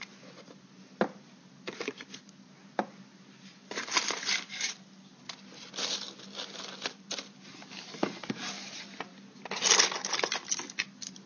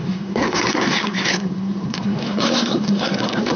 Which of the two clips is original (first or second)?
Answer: first